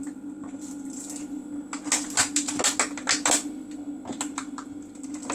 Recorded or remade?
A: recorded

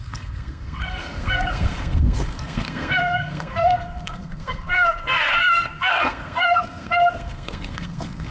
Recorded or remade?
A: remade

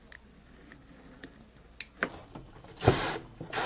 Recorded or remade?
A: recorded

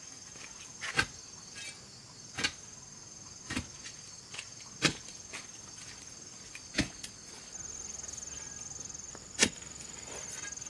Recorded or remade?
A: recorded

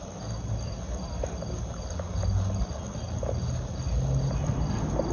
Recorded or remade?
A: recorded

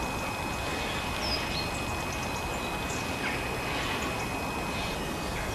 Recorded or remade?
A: recorded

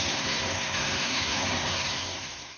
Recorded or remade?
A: remade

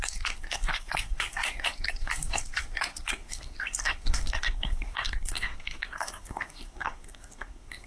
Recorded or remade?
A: remade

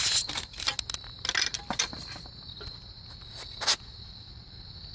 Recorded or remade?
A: recorded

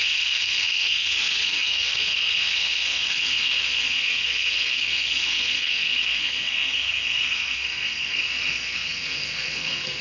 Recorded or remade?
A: remade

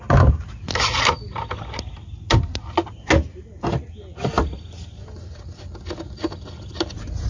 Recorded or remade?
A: recorded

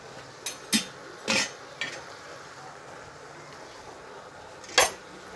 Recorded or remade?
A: recorded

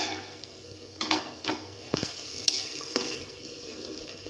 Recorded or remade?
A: remade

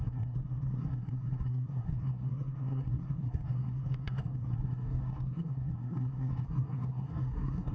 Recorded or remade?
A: remade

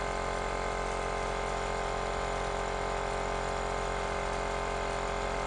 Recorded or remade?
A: recorded